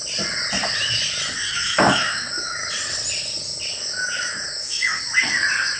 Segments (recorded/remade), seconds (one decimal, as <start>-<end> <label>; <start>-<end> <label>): 0.0-1.4 recorded; 1.4-2.7 remade; 2.7-4.0 recorded; 4.0-5.0 remade; 5.0-5.8 recorded